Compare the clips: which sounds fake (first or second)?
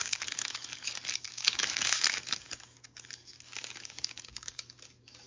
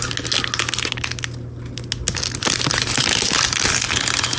first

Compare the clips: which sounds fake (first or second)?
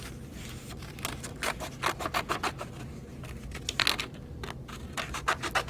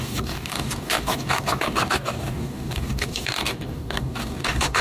second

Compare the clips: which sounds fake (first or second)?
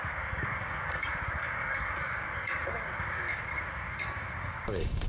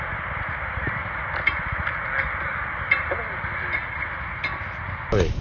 first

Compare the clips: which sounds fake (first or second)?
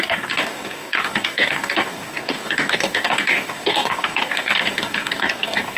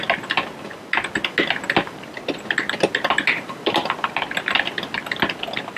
first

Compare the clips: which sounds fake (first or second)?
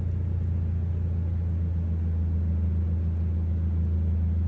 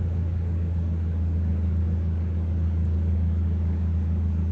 second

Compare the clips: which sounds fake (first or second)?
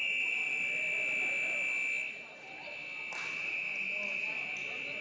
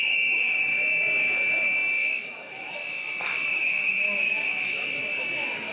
second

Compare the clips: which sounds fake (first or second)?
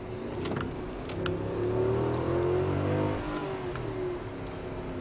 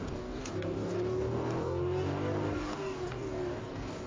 second